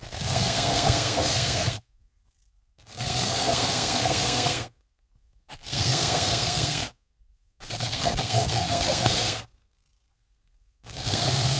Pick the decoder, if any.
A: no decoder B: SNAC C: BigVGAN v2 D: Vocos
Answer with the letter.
B